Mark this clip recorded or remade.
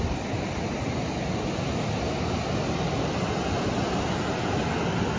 recorded